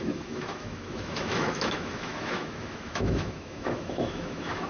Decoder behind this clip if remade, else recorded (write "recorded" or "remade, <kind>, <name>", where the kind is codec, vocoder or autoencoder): remade, autoencoder, DAC-VAE